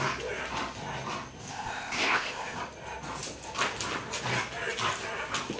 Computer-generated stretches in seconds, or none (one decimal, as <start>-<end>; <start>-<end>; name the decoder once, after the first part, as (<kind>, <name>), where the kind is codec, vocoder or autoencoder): 1.4-2.6 (codec, ZipCodec)